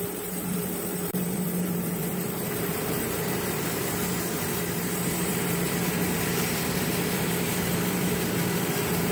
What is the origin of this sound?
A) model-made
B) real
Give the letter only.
A